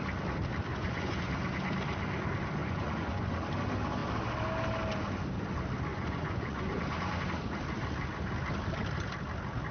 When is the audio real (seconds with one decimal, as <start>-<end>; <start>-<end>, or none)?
0.0-0.7; 1.3-2.6; 3.3-5.9; 6.8-9.7